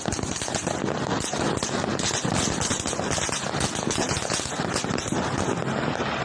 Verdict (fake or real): real